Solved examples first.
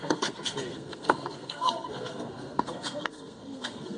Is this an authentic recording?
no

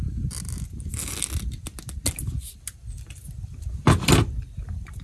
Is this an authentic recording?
yes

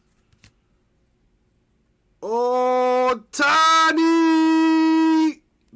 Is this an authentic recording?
yes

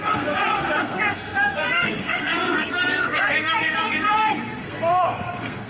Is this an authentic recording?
no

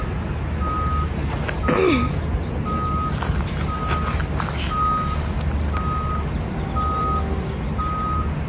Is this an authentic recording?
yes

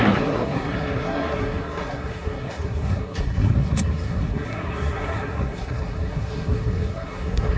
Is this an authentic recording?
no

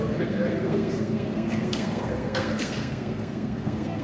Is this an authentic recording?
no